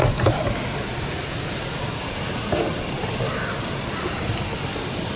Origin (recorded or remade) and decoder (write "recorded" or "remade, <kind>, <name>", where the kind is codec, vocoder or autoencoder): recorded